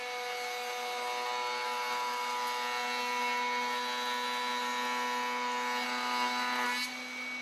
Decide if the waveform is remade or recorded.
recorded